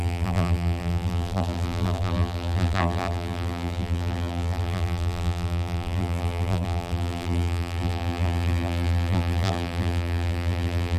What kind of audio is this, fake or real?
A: fake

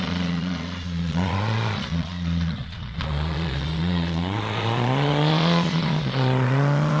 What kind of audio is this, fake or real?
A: fake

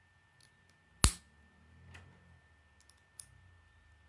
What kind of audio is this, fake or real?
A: real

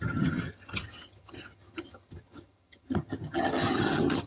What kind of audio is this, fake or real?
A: fake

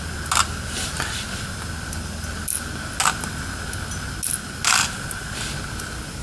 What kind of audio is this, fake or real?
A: real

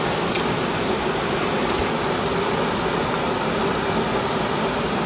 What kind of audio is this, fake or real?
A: real